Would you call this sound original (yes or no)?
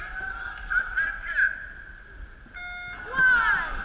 yes